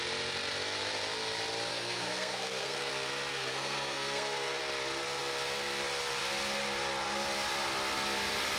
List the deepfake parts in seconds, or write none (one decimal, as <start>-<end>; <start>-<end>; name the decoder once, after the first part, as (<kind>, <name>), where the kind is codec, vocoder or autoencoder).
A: 1.7-2.9 (codec, SNAC); 3.3-4.6